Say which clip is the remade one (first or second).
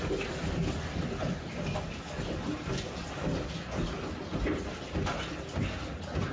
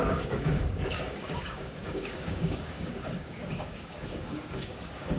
second